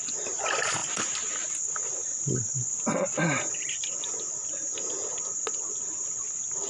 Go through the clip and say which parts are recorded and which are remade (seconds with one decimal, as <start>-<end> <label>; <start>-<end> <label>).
0.0-6.7 recorded